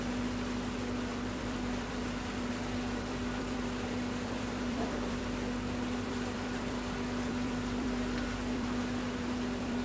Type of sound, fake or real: fake